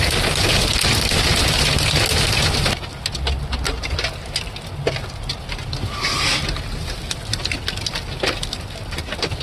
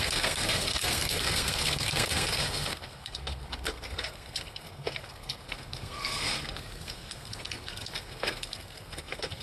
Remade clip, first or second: second